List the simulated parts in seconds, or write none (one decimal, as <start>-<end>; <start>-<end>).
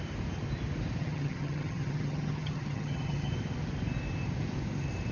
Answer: 1.0-3.3